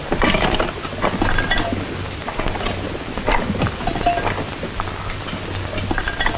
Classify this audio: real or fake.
real